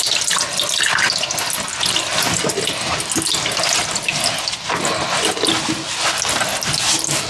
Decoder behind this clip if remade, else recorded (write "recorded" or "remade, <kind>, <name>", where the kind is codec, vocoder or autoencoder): recorded